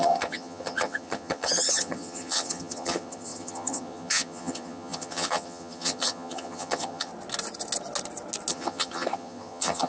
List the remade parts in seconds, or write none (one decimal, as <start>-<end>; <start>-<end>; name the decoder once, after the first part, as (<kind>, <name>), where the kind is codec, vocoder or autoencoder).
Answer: 0.0-7.1 (vocoder, HiFi-GAN); 8.5-9.9